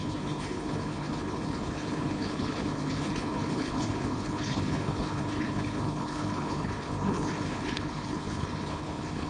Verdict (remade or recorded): remade